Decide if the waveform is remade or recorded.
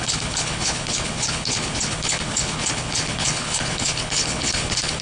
remade